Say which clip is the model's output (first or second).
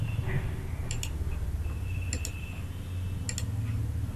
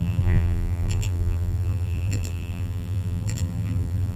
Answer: second